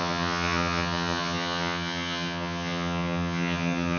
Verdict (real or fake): fake